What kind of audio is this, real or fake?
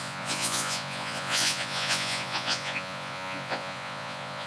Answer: fake